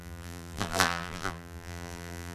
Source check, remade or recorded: remade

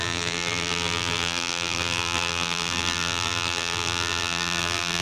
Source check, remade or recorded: remade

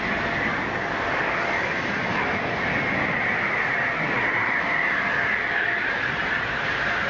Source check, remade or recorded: recorded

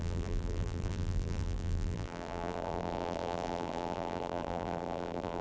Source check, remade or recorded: remade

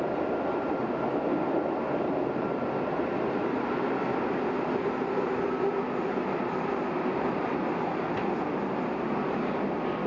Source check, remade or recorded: recorded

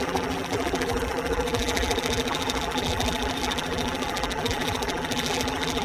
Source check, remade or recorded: remade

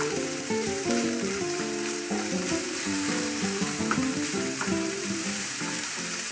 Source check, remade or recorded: remade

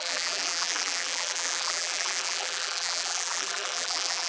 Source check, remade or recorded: remade